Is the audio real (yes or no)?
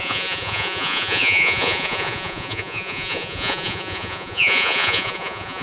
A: no